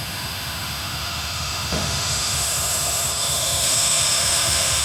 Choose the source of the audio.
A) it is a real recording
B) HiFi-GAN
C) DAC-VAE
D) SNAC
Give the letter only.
C